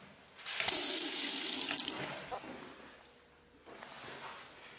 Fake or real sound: real